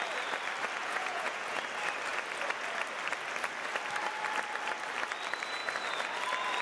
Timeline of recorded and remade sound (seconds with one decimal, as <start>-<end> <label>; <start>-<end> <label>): 0.0-0.8 recorded; 0.8-1.6 remade; 1.6-6.6 recorded